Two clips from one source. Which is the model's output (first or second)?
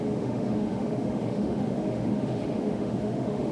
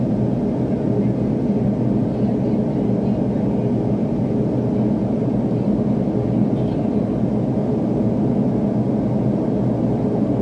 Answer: first